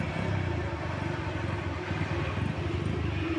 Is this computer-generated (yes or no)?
no